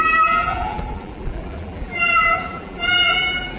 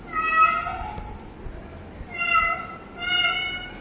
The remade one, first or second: first